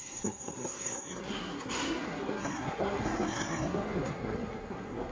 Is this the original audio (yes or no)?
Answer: no